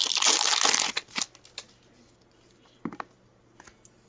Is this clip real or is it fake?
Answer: real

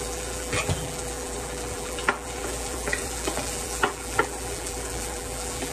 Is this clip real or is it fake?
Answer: fake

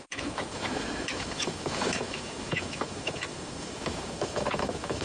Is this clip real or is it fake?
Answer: fake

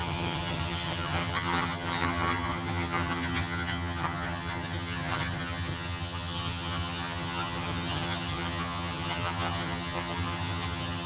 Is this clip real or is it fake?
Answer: fake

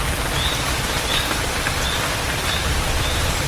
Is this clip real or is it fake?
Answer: real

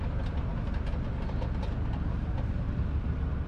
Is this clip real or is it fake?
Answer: real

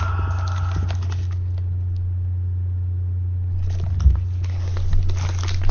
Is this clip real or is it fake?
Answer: real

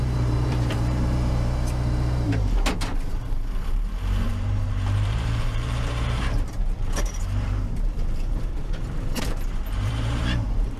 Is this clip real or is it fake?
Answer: fake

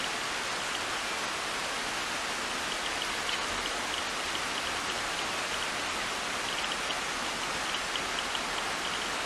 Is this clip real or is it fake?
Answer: real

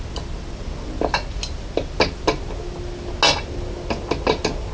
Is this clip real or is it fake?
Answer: real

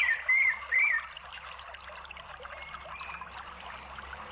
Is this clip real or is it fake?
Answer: real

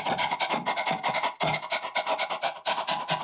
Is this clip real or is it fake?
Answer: real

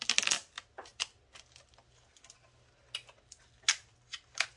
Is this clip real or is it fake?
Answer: real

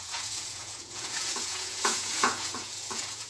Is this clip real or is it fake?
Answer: fake